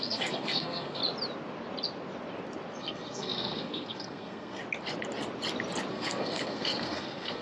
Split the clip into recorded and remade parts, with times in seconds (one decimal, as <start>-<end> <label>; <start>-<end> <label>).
0.0-1.0 remade; 1.0-2.8 recorded; 2.8-4.6 remade; 4.6-5.9 recorded; 5.9-7.4 remade